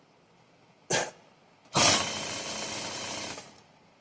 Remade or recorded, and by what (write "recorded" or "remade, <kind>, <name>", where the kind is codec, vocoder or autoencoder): recorded